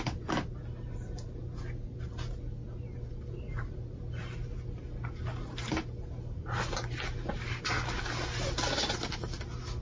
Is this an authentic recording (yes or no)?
yes